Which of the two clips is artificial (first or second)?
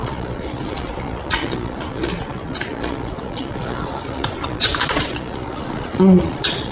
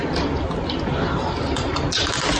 first